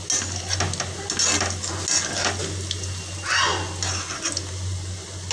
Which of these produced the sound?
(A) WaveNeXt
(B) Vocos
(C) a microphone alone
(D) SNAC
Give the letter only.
C